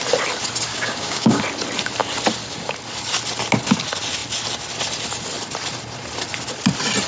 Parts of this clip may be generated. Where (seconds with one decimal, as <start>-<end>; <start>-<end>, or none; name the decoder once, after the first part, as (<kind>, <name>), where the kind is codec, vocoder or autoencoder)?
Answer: 0.7-1.4 (codec, DAC)